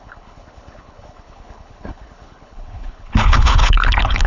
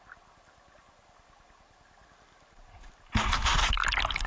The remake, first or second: first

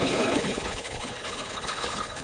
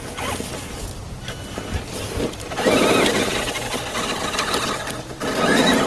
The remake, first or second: first